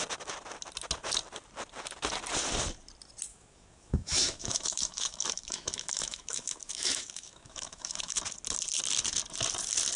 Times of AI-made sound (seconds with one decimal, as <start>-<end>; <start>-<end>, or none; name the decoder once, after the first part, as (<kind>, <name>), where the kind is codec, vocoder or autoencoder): 3.3-8.2 (autoencoder, DAC-VAE)